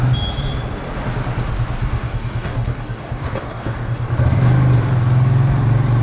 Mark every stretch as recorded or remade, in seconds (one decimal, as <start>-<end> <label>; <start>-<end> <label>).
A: 0.0-1.8 recorded; 1.8-4.1 remade; 4.1-6.0 recorded